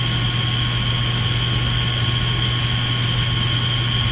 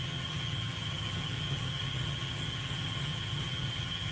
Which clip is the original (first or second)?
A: first